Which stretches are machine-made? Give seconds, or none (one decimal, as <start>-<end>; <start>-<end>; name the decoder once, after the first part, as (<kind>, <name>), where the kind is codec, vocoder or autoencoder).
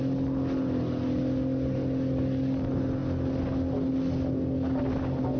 none